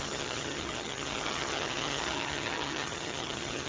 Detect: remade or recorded remade